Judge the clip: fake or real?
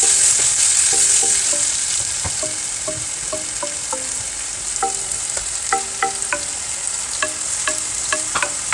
real